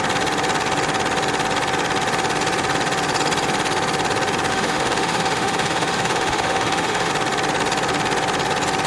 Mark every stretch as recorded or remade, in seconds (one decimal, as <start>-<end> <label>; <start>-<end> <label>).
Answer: 0.0-4.5 recorded; 4.5-7.1 remade; 7.1-8.9 recorded